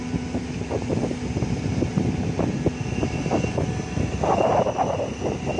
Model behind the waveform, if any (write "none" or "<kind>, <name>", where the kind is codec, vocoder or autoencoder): none